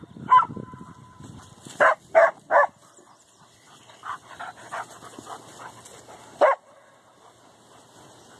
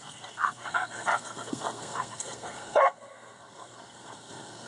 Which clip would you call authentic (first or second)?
first